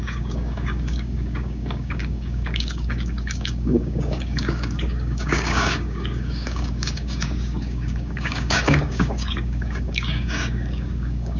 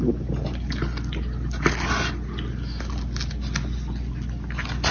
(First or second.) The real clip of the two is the second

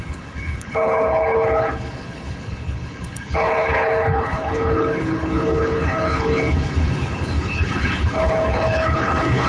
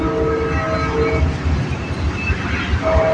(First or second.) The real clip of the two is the second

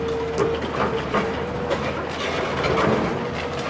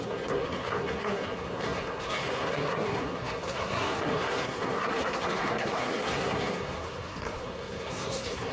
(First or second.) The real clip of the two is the first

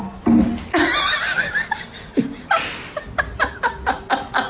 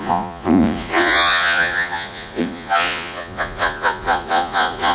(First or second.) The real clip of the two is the first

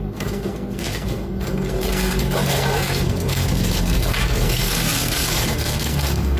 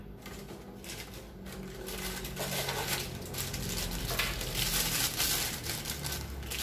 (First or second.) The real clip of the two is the second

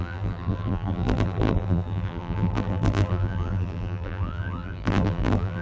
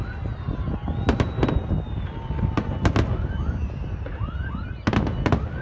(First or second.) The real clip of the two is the second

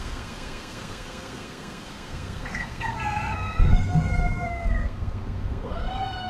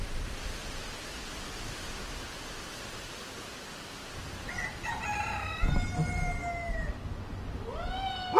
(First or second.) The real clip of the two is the second